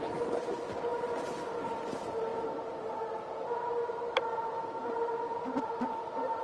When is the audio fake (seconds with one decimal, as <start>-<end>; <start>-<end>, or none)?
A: none